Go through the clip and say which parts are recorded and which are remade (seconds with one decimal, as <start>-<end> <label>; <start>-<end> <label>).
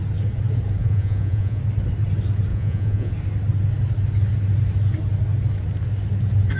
0.0-0.8 recorded; 0.8-1.6 remade; 1.6-2.5 recorded; 2.5-3.1 remade; 3.1-6.6 recorded